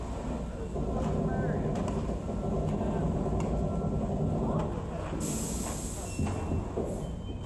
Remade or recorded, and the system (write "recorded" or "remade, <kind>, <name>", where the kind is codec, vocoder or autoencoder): recorded